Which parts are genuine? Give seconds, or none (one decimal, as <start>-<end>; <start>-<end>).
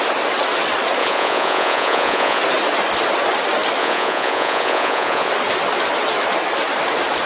0.0-1.0; 2.4-3.8; 5.3-7.3